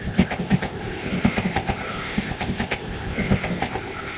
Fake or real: fake